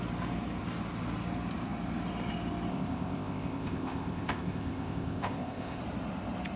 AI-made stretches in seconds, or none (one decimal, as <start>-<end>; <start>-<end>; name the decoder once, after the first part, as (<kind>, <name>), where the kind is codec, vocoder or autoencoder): 2.7-5.8 (codec, ZipCodec)